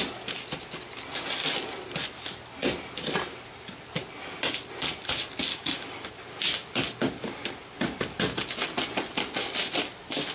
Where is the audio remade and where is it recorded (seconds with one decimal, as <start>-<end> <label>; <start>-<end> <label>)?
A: 0.0-5.5 recorded; 5.5-6.1 remade; 6.1-10.3 recorded